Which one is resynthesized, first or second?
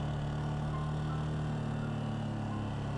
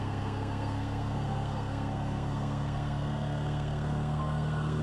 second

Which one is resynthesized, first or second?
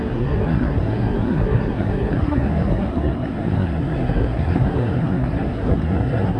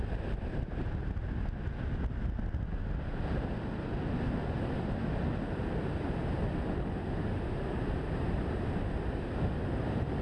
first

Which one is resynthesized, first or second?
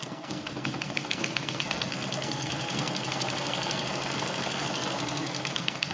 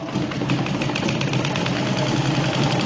first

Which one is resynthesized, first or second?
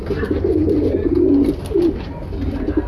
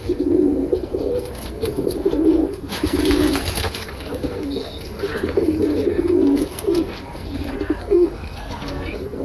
second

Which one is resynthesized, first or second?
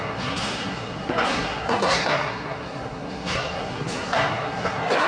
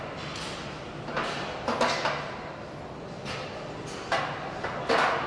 first